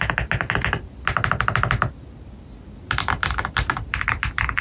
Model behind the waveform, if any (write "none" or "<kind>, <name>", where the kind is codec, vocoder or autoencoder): none